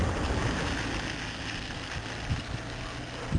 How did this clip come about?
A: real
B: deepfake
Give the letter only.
A